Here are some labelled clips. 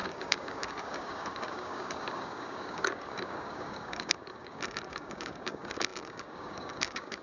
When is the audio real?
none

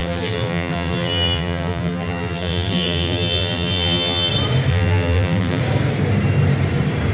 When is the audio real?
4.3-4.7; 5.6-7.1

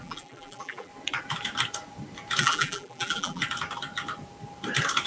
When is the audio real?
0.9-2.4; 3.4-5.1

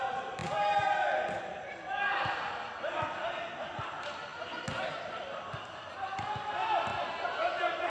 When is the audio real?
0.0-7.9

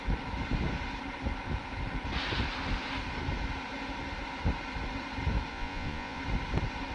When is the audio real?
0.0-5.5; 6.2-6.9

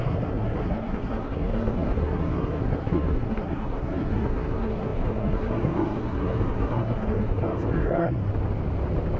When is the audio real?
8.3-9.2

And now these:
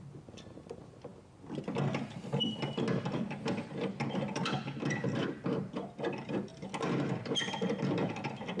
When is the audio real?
0.0-8.6

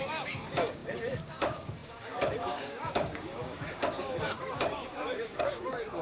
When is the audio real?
none